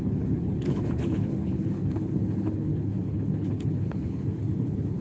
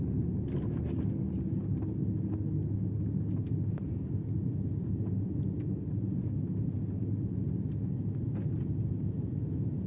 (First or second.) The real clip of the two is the second